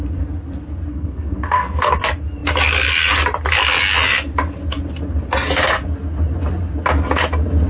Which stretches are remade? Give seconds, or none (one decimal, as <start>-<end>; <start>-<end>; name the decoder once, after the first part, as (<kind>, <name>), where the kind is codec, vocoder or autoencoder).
0.9-2.0 (codec, SNAC)